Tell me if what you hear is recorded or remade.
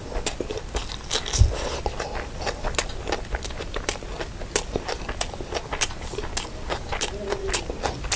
recorded